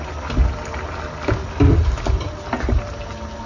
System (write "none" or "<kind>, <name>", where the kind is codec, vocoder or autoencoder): none